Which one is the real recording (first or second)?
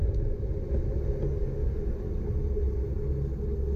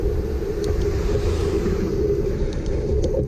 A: first